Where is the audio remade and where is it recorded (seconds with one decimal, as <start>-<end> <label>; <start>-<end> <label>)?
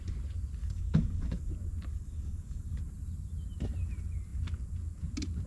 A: 0.0-0.6 recorded; 0.6-1.5 remade; 1.5-1.9 recorded; 1.9-2.8 remade; 2.8-5.5 recorded